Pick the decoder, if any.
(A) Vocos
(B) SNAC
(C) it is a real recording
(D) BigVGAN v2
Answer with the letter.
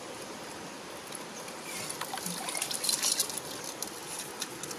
C